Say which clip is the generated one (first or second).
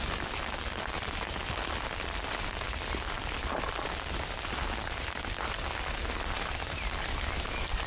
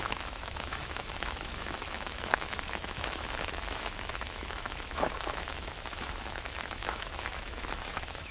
second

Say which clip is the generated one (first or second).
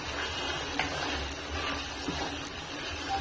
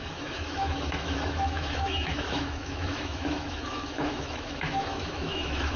second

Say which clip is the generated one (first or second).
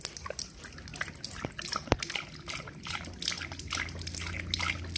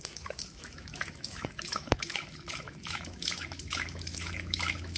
second